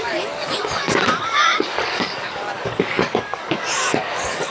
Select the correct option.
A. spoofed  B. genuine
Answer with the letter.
A